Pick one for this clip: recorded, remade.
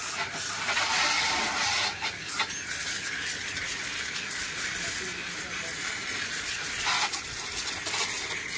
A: recorded